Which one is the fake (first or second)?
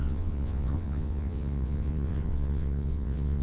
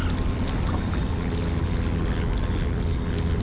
first